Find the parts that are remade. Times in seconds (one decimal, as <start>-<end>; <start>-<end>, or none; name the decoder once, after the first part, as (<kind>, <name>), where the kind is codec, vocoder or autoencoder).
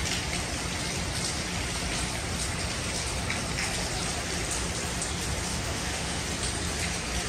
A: 5.5-6.2 (autoencoder, DAC-VAE)